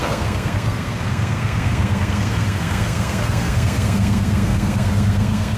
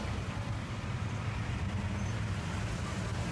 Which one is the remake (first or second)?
first